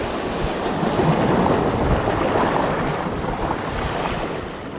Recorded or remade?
recorded